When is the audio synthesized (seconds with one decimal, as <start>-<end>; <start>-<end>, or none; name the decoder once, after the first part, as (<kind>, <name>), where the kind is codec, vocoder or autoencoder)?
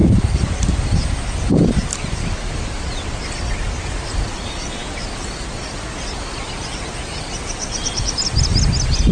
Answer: 0.0-2.8 (vocoder, BigVGAN v2)